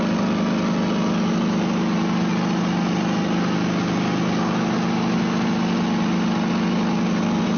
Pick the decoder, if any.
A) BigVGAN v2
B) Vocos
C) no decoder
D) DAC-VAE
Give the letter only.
C